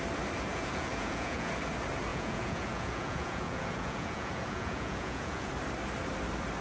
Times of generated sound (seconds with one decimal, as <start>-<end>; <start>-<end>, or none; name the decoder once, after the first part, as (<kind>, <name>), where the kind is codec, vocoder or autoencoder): 0.5-1.5 (vocoder, Vocos); 2.1-5.5

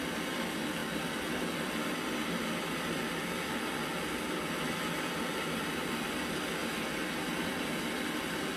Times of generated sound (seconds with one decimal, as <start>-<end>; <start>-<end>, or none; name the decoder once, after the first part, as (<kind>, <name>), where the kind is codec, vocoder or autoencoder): none

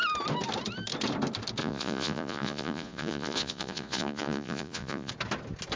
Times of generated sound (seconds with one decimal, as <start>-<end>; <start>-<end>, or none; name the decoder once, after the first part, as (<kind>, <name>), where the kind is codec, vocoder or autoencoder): 1.6-5.1 (vocoder, Vocos)

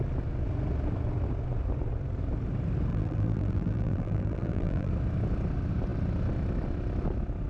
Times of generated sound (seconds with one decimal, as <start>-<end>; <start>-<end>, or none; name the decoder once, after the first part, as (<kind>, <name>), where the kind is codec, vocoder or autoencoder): 2.9-4.9 (vocoder, BigVGAN v2)

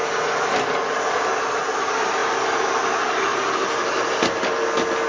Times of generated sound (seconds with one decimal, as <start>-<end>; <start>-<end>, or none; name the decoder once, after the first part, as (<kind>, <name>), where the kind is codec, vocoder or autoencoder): none